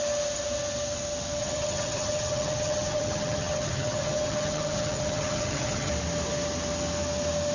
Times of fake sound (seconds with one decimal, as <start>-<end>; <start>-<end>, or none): 1.4-5.9